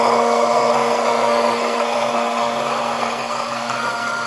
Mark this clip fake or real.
fake